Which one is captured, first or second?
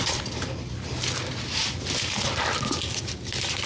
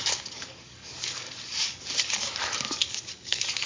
first